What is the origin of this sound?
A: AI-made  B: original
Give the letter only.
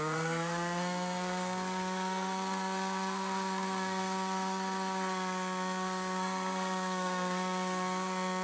A